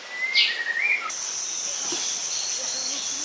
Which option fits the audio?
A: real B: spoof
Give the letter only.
A